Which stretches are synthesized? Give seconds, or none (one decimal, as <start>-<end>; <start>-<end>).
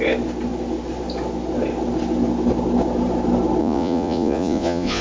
3.6-5.0